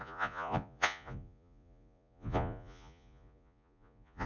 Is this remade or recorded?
remade